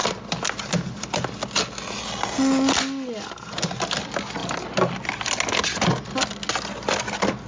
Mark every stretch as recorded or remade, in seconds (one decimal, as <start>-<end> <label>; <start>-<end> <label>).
0.0-7.5 recorded